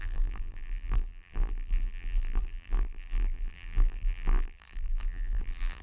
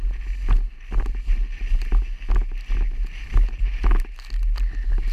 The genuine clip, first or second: second